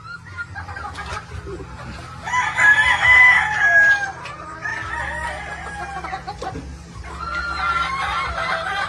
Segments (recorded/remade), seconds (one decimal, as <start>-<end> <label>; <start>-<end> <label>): 0.0-8.9 recorded